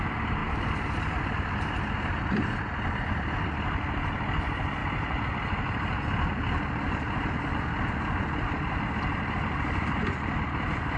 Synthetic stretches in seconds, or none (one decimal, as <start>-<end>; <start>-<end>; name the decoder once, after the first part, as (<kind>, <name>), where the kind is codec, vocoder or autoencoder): 4.8-6.0 (vocoder, BigVGAN v2)